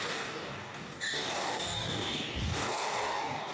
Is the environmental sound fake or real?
fake